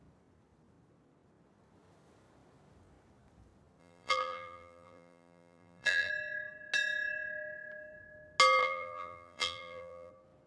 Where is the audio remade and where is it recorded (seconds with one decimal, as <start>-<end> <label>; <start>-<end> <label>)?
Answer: 0.0-3.8 recorded; 3.8-6.1 remade; 6.1-8.6 recorded; 8.6-10.1 remade; 10.1-10.5 recorded